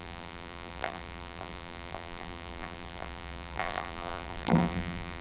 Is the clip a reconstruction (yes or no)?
yes